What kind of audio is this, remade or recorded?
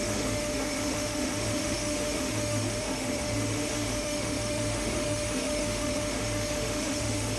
remade